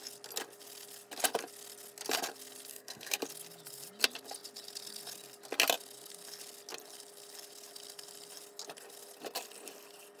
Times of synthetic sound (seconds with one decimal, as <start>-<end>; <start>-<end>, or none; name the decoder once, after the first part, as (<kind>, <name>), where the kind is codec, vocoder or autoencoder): 2.7-3.2 (codec, SNAC)